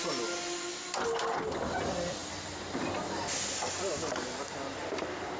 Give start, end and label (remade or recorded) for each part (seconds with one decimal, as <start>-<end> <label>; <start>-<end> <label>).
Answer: 0.0-5.4 recorded